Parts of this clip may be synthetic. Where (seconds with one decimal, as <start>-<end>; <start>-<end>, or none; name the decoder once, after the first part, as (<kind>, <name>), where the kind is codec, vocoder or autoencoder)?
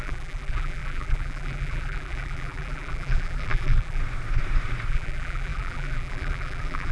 0.0-4.0 (vocoder, BigVGAN v2); 4.9-6.9